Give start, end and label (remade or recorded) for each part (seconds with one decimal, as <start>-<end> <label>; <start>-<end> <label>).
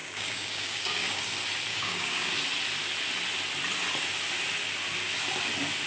0.0-1.2 remade; 1.2-1.7 recorded; 1.7-2.3 remade; 2.3-5.9 recorded